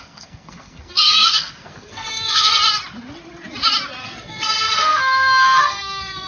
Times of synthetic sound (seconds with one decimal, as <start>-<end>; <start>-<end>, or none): 0.0-2.6; 4.0-6.3